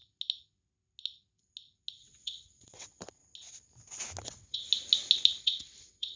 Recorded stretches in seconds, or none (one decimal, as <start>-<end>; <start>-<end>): 0.0-2.0; 3.2-4.2; 4.7-5.4